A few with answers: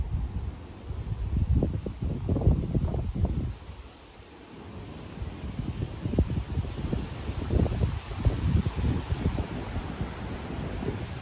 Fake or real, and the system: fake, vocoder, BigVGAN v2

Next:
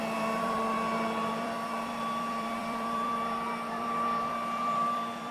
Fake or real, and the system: fake, vocoder, BigVGAN v2